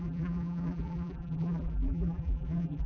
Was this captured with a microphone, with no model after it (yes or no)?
no